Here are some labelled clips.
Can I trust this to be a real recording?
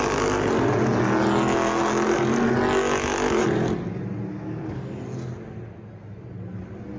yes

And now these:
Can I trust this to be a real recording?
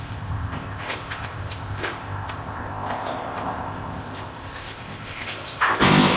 no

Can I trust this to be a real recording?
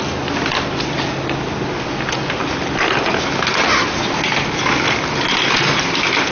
yes